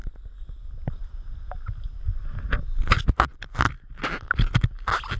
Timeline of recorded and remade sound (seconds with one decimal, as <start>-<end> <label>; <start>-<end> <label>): 0.0-0.5 remade; 0.5-5.2 recorded